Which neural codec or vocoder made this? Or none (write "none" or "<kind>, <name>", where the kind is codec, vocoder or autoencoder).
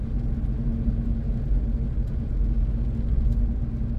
none